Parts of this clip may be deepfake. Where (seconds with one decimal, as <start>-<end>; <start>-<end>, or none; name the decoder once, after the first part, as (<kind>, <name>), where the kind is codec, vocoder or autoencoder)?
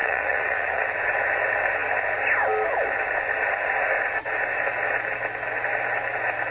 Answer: 0.0-0.8 (vocoder, Vocos)